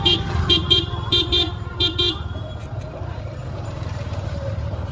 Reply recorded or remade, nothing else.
remade